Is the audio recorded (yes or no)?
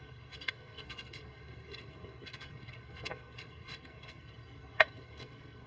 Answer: no